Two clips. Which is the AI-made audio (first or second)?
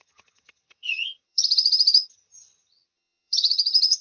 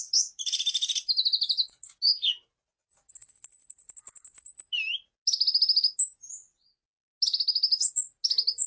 first